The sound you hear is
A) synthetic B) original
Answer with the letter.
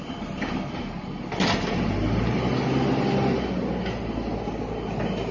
B